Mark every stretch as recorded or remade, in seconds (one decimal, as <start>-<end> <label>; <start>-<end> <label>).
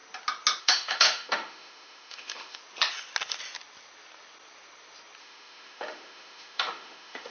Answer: 0.0-0.6 recorded; 0.6-2.6 remade; 2.6-5.2 recorded; 5.2-7.3 remade